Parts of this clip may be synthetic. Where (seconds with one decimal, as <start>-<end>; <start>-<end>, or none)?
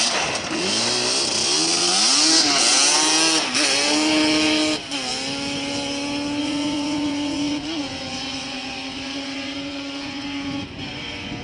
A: 6.4-11.4